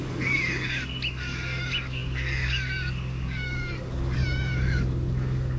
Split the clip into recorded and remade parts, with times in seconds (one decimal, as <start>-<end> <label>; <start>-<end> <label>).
0.0-5.6 remade

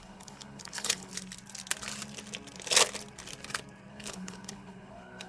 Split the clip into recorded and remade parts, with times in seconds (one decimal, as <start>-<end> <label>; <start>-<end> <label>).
0.0-1.1 remade; 1.1-3.9 recorded; 3.9-5.3 remade

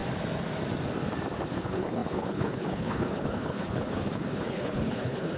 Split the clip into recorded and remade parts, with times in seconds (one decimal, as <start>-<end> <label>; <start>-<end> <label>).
0.0-1.6 recorded; 1.6-5.4 remade

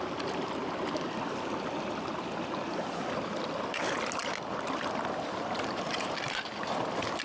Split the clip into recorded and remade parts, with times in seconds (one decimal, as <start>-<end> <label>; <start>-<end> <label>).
0.0-7.2 recorded

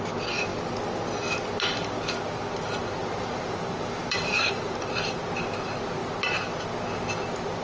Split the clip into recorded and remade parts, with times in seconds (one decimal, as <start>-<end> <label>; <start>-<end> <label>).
0.0-3.0 recorded; 3.0-4.6 remade; 4.6-7.6 recorded

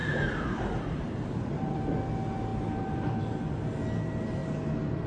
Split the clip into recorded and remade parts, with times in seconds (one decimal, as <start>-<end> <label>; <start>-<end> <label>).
0.0-2.1 remade; 2.1-2.5 recorded; 2.5-3.2 remade; 3.2-5.1 recorded